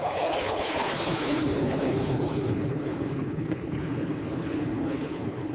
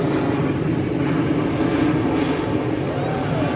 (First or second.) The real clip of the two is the second